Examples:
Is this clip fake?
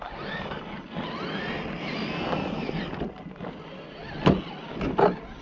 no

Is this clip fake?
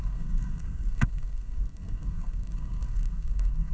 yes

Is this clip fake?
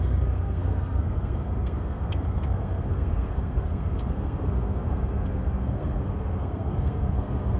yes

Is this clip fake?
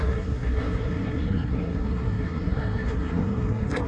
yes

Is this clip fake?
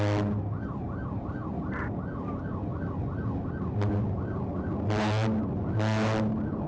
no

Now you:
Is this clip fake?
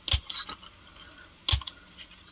no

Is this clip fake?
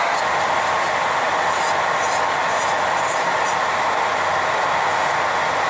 no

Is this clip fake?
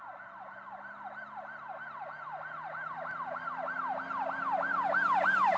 no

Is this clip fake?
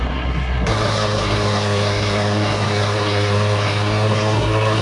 yes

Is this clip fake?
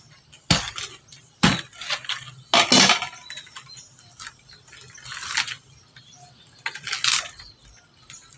no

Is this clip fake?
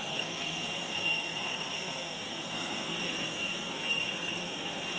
yes